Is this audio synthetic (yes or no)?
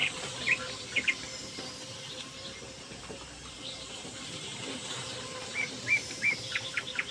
yes